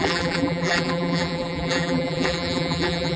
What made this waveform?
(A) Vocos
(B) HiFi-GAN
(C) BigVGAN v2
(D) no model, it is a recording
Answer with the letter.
C